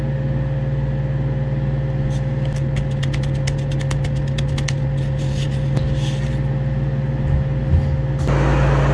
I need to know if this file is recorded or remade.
recorded